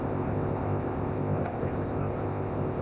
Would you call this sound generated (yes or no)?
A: yes